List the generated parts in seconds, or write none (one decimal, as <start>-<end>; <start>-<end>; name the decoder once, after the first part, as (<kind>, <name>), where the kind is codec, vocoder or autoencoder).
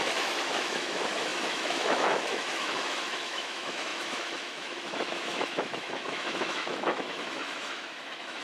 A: 0.0-8.4 (autoencoder, DAC-VAE)